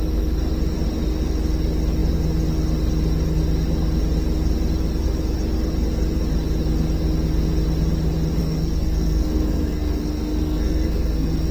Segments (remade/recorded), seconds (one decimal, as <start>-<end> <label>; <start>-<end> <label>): 0.0-8.4 recorded; 8.4-11.5 remade